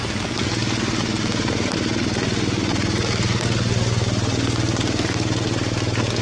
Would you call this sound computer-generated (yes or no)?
no